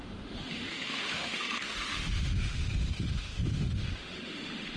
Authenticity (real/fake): fake